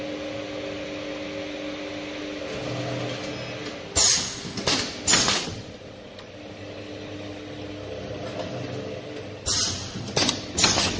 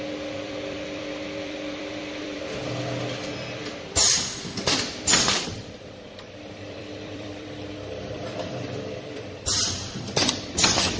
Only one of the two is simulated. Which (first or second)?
second